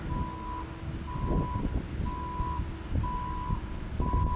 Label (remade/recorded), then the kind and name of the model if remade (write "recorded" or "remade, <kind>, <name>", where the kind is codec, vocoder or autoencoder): recorded